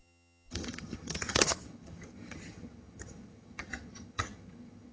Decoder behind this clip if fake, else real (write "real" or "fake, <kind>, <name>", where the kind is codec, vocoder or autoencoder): fake, vocoder, HiFi-GAN